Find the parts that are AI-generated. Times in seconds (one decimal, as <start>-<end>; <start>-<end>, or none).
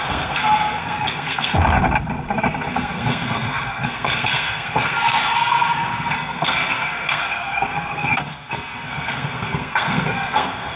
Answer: 0.0-1.6; 2.7-10.8